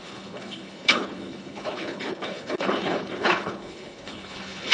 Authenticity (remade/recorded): remade